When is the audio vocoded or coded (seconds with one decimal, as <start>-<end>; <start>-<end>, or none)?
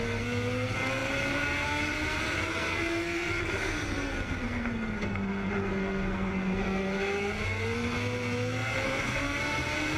0.0-10.0